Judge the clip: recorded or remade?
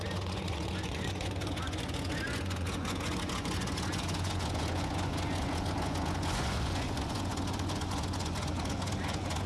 remade